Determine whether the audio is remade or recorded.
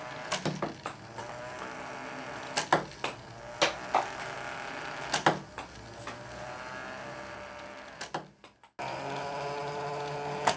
recorded